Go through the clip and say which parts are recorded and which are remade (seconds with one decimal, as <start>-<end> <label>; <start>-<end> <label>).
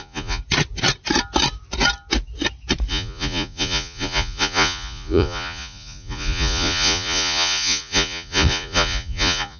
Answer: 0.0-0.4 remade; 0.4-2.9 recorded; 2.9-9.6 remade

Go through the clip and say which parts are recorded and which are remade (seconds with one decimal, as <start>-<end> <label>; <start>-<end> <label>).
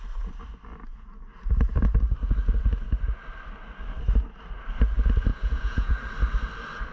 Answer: 0.0-5.3 recorded; 5.3-5.9 remade; 5.9-6.9 recorded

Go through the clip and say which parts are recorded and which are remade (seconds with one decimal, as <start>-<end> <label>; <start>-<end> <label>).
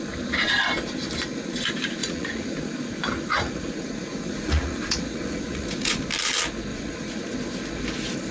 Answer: 0.0-2.0 recorded; 2.0-2.6 remade; 2.6-3.3 recorded; 3.3-6.0 remade; 6.0-6.7 recorded; 6.7-7.2 remade; 7.2-8.3 recorded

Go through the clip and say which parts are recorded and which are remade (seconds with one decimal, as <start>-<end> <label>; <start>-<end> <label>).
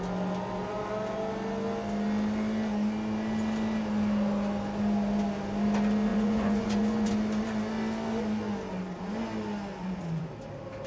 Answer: 0.0-6.1 recorded; 6.1-7.1 remade; 7.1-9.7 recorded; 9.7-10.3 remade; 10.3-10.9 recorded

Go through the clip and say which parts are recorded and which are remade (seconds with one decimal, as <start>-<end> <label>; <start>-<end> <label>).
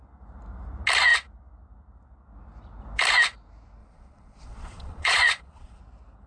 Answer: 0.0-3.8 recorded; 3.8-5.8 remade; 5.8-6.3 recorded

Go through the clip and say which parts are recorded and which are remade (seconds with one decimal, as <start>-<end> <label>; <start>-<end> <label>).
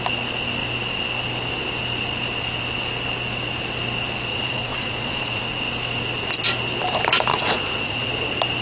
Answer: 0.0-4.3 recorded; 4.3-5.4 remade; 5.4-7.3 recorded; 7.3-8.1 remade; 8.1-8.6 recorded